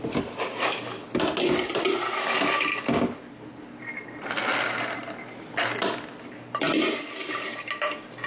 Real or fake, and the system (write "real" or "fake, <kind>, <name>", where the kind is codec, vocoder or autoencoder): real